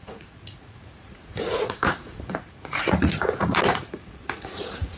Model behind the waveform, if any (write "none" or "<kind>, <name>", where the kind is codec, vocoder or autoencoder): vocoder, Vocos